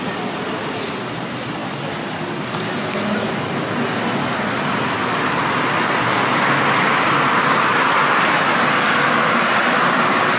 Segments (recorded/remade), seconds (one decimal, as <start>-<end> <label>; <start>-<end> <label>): 0.0-10.4 recorded